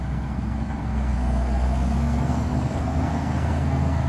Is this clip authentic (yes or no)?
no